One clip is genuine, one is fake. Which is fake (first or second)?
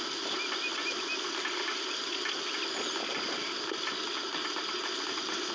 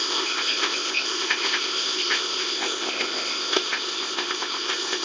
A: second